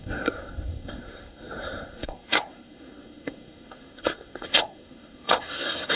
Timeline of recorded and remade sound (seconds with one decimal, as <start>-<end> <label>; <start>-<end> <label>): 0.0-6.0 remade